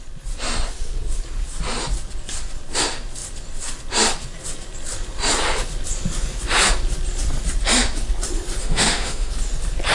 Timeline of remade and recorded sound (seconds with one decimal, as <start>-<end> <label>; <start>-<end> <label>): 0.0-8.6 recorded; 8.6-9.3 remade; 9.3-9.9 recorded